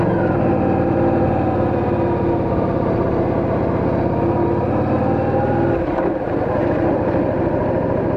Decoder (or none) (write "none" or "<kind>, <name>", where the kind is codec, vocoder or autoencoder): none